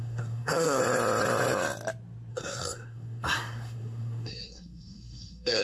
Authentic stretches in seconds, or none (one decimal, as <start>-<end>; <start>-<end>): 0.8-2.3